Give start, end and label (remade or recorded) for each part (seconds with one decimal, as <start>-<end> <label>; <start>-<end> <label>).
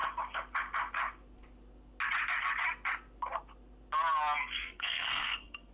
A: 0.0-4.6 recorded; 4.6-5.7 remade